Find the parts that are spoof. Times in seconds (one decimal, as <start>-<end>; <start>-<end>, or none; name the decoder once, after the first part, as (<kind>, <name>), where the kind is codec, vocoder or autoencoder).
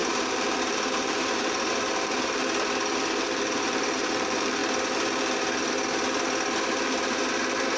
0.0-2.4 (vocoder, BigVGAN v2); 2.9-4.6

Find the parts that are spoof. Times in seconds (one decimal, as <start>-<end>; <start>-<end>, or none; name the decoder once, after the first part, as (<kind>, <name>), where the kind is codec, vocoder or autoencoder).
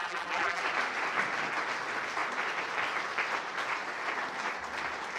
0.0-0.6 (vocoder, BigVGAN v2)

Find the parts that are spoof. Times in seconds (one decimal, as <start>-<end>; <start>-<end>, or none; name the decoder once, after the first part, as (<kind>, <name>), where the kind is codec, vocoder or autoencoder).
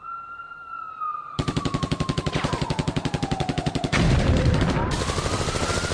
1.1-4.6 (vocoder, BigVGAN v2)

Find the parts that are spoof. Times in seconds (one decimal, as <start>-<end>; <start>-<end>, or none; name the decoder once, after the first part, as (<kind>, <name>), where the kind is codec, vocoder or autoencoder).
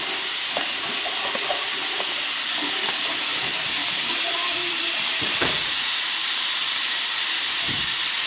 3.8-8.3 (vocoder, BigVGAN v2)